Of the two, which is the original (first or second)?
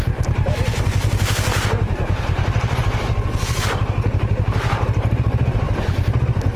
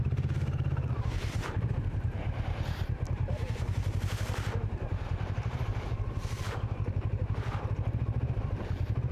first